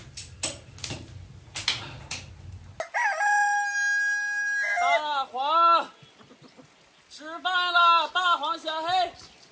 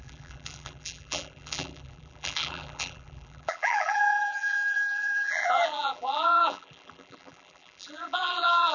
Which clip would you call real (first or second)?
first